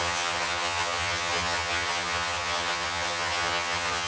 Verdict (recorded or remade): remade